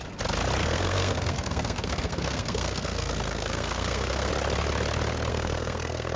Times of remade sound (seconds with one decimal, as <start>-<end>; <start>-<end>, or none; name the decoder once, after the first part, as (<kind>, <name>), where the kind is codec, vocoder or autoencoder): 0.6-4.3 (codec, SNAC); 5.3-6.2